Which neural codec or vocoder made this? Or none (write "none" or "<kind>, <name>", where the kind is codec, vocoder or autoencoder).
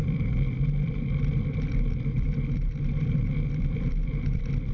vocoder, BigVGAN v2